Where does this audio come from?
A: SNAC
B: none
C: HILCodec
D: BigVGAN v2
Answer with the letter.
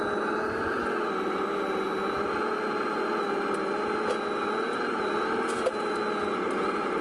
B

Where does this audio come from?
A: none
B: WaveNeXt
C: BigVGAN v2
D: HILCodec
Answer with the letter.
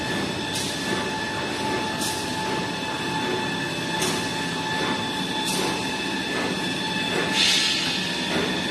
A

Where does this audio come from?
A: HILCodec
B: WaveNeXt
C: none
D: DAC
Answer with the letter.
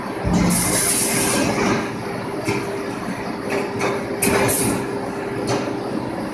C